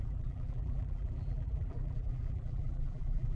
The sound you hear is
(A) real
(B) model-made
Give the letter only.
B